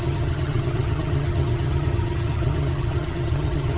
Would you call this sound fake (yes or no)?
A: yes